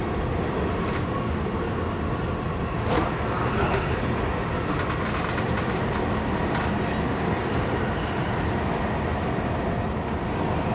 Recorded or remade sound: recorded